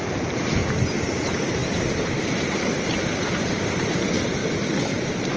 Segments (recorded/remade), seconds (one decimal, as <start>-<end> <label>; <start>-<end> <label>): 0.0-0.6 remade; 0.6-1.2 recorded; 1.2-4.4 remade; 4.4-5.4 recorded